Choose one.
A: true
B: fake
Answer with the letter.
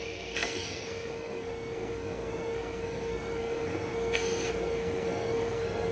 B